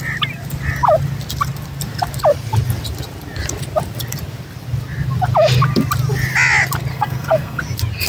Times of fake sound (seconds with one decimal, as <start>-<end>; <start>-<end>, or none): 6.9-7.6